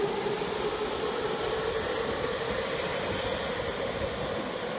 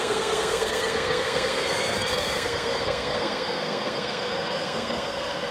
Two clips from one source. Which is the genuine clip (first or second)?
first